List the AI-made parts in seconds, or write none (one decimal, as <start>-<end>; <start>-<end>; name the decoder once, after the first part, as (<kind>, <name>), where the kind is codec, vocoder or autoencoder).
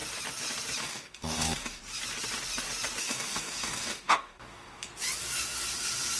0.8-1.8 (codec, DAC); 3.0-4.9